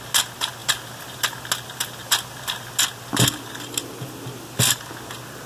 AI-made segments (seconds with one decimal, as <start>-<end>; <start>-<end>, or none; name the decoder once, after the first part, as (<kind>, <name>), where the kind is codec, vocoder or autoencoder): none